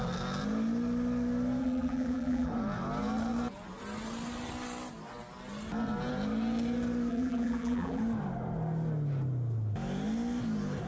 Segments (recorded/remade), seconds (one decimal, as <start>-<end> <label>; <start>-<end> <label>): 0.0-1.6 recorded; 1.6-2.5 remade; 2.5-7.1 recorded; 7.1-8.0 remade; 8.0-10.9 recorded